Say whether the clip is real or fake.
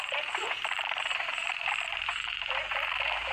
fake